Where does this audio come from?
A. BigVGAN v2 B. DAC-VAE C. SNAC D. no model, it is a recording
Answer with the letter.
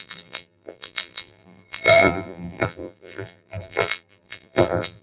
A